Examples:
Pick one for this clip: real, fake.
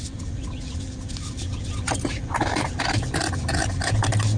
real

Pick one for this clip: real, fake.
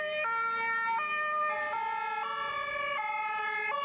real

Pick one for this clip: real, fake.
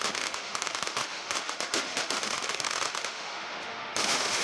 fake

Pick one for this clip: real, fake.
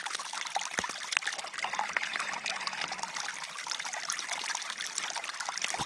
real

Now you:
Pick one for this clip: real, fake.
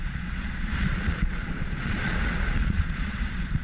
fake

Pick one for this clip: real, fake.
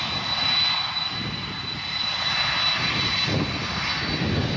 real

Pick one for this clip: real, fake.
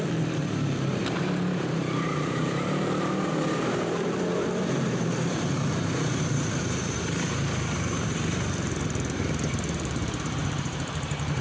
fake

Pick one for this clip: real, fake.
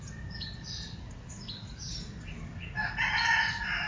real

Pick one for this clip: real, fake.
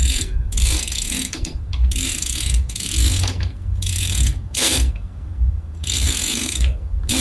fake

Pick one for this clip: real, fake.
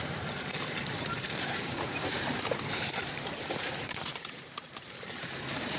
fake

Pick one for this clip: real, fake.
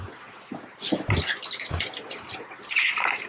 real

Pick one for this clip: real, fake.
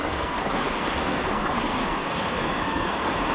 fake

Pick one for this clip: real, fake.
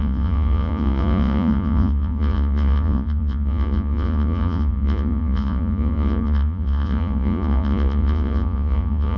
fake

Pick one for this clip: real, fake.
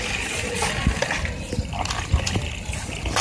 real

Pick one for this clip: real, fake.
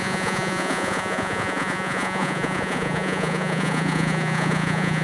fake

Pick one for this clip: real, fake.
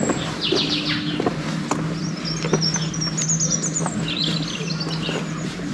real